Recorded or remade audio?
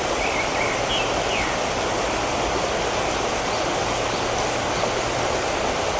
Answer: recorded